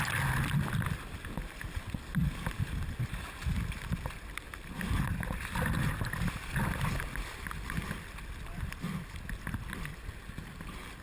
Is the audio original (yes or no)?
yes